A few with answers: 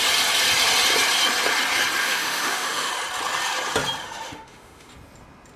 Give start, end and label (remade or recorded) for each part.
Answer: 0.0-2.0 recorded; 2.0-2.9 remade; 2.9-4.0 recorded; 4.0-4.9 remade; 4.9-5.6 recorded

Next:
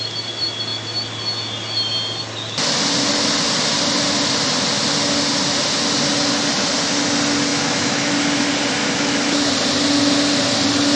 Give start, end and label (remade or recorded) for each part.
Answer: 0.0-7.5 recorded; 7.5-8.1 remade; 8.1-8.8 recorded; 8.8-9.5 remade; 9.5-11.0 recorded

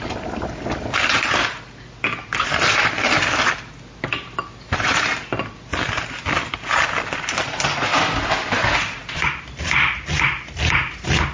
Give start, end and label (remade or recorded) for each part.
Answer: 0.0-11.3 recorded

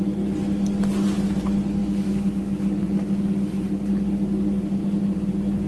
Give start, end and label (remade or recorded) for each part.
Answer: 0.0-1.8 recorded; 1.8-2.4 remade; 2.4-5.7 recorded

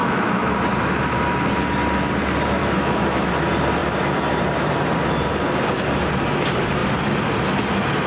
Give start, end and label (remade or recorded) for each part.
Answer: 0.0-0.5 remade; 0.5-2.6 recorded; 2.6-3.3 remade; 3.3-8.1 recorded